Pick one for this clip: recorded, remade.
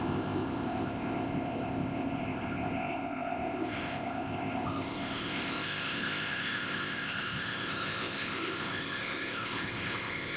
remade